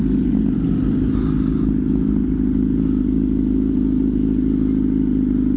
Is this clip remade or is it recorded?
recorded